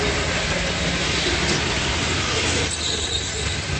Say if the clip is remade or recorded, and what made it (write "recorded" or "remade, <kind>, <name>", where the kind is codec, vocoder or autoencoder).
recorded